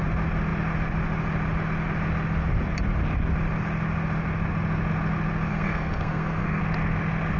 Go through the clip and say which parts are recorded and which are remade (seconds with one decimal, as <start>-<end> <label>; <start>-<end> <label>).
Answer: 0.0-5.5 recorded; 5.5-6.6 remade; 6.6-7.4 recorded